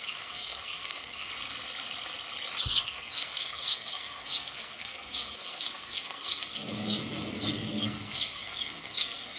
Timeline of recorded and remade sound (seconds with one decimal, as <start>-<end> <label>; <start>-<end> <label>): 0.0-1.3 remade; 1.3-2.6 recorded; 2.6-9.4 remade